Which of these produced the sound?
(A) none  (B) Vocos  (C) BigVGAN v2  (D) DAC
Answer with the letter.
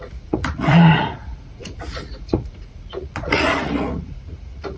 B